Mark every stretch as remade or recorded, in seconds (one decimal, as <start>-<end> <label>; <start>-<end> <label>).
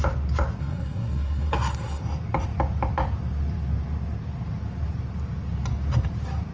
0.0-0.6 recorded; 0.6-2.0 remade; 2.0-6.5 recorded